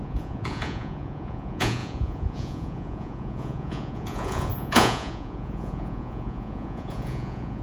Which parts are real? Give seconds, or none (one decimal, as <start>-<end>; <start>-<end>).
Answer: none